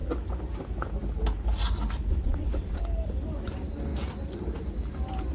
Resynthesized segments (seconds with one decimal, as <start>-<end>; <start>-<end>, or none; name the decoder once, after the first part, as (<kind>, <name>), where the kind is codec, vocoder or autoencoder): 2.1-2.8 (vocoder, WaveNeXt)